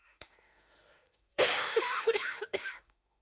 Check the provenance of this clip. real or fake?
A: fake